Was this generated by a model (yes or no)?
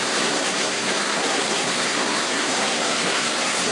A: yes